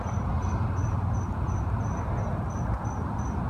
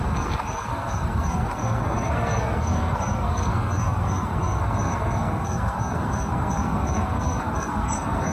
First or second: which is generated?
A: second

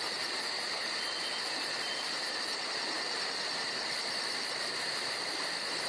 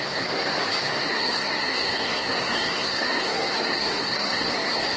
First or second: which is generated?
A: second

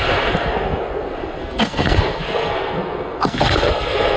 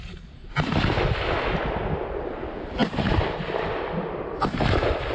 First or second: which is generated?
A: first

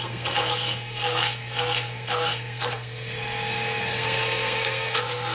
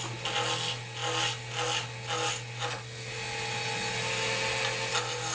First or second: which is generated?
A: first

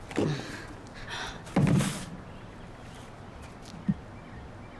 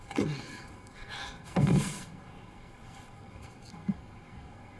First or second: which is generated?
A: second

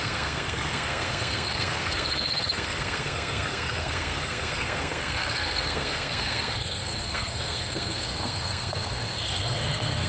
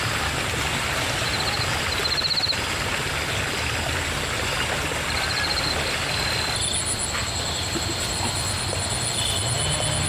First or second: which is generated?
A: first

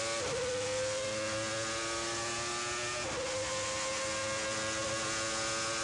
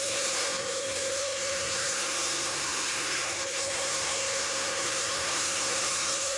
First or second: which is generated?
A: second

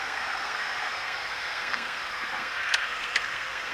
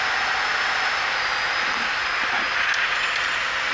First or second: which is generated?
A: first